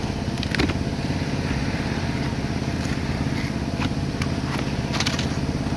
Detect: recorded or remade recorded